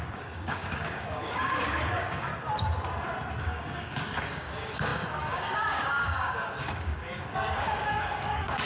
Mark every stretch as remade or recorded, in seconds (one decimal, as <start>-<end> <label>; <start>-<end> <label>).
0.0-2.3 remade; 2.3-3.4 recorded; 3.4-8.7 remade